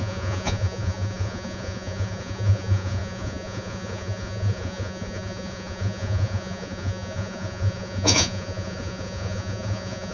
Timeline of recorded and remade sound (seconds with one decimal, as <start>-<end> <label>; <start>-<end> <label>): 0.0-10.1 remade